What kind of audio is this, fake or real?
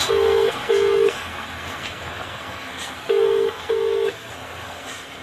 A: fake